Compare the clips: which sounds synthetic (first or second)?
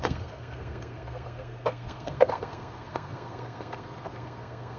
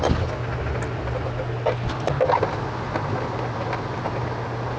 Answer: first